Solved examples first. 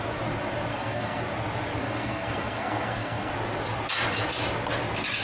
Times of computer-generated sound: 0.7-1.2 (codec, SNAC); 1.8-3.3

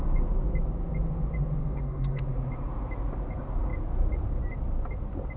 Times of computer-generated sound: 1.6-2.2 (codec, SNAC)

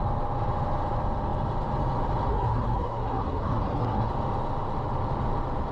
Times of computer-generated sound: 2.3-4.1 (codec, SNAC)

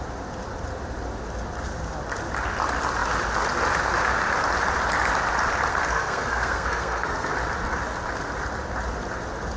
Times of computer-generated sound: 5.7-7.3 (codec, SNAC)

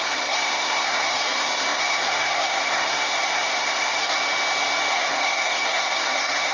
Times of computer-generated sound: 0.0-4.2 (codec, SNAC); 4.9-6.5

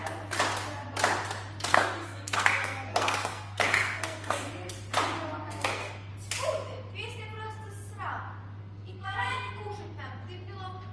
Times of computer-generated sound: 1.7-4.5 (codec, SNAC); 5.5-6.1; 8.6-9.5

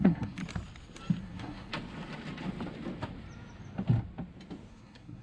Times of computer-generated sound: 0.0-0.4 (codec, SNAC); 1.2-1.7; 4.7-5.2